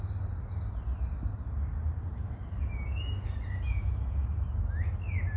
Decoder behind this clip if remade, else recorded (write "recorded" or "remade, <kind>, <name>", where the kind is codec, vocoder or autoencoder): recorded